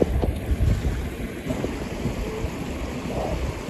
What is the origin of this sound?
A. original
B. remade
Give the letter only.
A